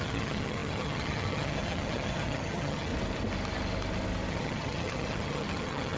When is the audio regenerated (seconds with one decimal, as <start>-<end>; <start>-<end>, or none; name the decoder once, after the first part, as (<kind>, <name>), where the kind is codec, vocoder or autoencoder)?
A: 0.0-2.9 (vocoder, HiFi-GAN); 4.3-6.0